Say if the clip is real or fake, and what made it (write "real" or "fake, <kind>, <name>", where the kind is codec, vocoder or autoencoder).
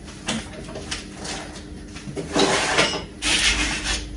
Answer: real